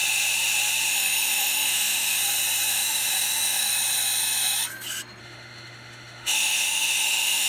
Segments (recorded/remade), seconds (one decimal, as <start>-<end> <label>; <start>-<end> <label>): 0.0-0.9 recorded; 0.9-2.2 remade; 2.2-2.7 recorded; 2.7-3.7 remade; 3.7-5.2 recorded; 5.2-7.5 remade